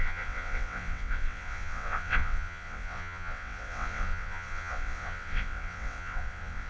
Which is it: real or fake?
fake